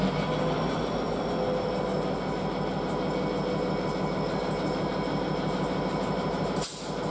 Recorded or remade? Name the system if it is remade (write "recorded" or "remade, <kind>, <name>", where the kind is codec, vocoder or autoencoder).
recorded